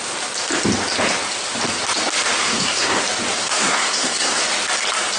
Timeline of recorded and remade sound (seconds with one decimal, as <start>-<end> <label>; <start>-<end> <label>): 0.0-2.4 recorded; 2.4-3.0 remade; 3.0-3.4 recorded; 3.4-4.4 remade; 4.4-5.2 recorded